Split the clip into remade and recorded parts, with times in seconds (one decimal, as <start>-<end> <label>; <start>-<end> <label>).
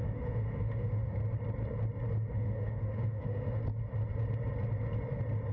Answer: 0.0-1.2 remade; 1.2-2.3 recorded; 2.3-3.6 remade; 3.6-5.5 recorded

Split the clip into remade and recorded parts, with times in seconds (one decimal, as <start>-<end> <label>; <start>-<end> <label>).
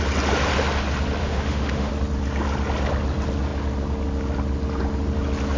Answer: 0.0-1.2 recorded; 1.2-1.9 remade; 1.9-5.6 recorded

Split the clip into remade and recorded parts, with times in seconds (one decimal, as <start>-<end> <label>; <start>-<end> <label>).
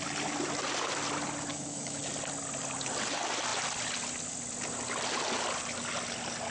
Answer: 0.0-1.5 recorded; 1.5-2.0 remade; 2.0-6.5 recorded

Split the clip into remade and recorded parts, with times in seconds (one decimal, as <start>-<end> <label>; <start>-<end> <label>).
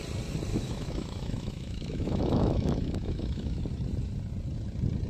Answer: 0.0-0.5 recorded; 0.5-3.6 remade; 3.6-5.1 recorded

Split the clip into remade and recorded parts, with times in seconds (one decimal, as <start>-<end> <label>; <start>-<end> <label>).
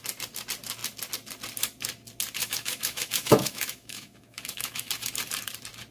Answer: 0.0-2.4 recorded; 2.4-4.9 remade; 4.9-5.9 recorded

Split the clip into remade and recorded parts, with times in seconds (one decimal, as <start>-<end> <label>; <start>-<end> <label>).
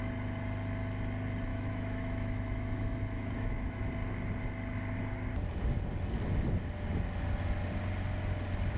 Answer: 0.0-1.5 recorded; 1.5-3.8 remade; 3.8-8.8 recorded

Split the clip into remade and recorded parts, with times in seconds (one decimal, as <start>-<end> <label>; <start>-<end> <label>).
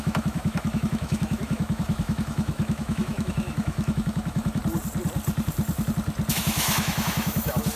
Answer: 0.0-4.6 remade; 4.6-6.3 recorded; 6.3-7.8 remade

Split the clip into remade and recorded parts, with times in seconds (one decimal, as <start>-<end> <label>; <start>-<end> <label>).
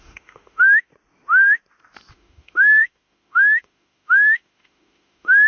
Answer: 0.0-0.9 remade; 0.9-2.1 recorded; 2.1-5.5 remade